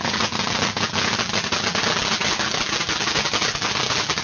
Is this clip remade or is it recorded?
remade